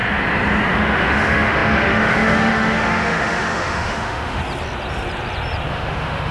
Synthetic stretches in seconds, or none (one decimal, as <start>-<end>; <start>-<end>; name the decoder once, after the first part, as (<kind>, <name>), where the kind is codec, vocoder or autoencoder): 0.7-4.4 (autoencoder, DAC-VAE); 5.7-6.3

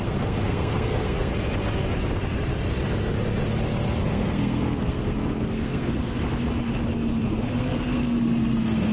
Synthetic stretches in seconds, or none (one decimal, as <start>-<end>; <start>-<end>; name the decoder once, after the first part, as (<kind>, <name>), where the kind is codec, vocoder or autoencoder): 0.0-1.3 (codec, SNAC); 4.0-6.2; 7.3-8.9

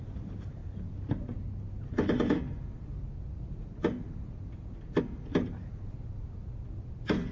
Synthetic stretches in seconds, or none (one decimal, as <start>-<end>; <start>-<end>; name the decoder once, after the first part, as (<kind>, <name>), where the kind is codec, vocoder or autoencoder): none

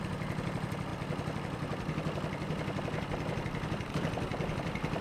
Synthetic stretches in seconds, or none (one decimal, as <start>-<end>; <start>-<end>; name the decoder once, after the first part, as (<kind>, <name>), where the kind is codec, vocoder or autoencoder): none

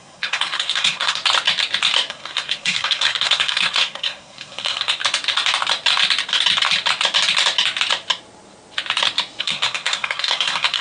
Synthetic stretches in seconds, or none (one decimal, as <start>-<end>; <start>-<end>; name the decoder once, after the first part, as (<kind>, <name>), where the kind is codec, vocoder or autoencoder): 0.0-1.2 (codec, SNAC); 2.1-5.0; 9.4-10.8

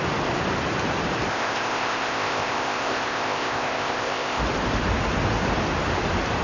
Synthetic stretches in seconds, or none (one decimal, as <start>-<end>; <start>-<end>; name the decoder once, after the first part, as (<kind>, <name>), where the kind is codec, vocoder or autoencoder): 1.3-4.4 (codec, ZipCodec)